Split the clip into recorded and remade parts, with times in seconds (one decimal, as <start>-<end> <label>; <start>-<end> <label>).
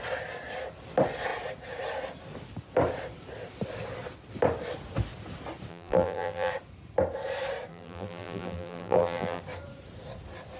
0.0-5.7 recorded; 5.7-6.5 remade; 6.5-7.7 recorded; 7.7-9.4 remade; 9.4-10.6 recorded